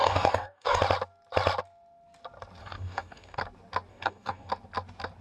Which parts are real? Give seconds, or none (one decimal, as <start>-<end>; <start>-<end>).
0.8-2.6; 3.4-3.9; 4.5-5.2